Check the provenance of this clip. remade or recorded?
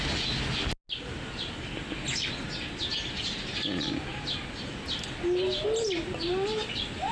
recorded